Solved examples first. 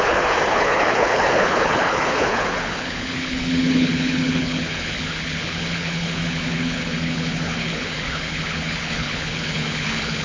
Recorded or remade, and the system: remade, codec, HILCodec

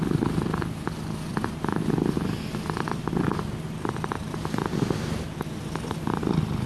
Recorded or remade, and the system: recorded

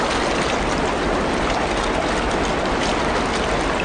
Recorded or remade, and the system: recorded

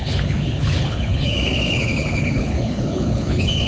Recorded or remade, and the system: remade, codec, HILCodec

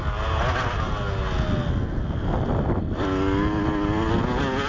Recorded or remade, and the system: recorded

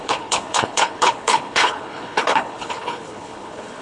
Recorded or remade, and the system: remade, codec, HILCodec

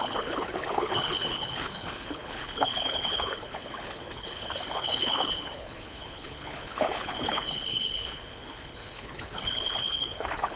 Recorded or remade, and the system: remade, codec, HILCodec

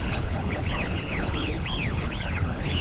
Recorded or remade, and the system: remade, codec, HILCodec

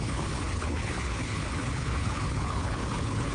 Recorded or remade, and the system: remade, codec, HILCodec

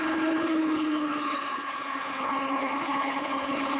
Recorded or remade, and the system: remade, codec, HILCodec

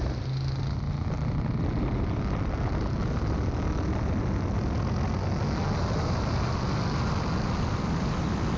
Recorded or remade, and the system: recorded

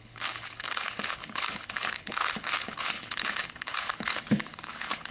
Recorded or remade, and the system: remade, codec, HILCodec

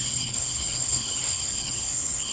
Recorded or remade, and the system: remade, codec, HILCodec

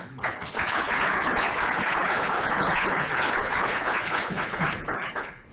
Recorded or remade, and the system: remade, codec, HILCodec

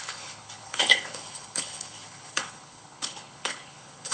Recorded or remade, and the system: remade, codec, HILCodec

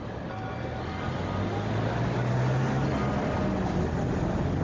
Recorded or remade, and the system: recorded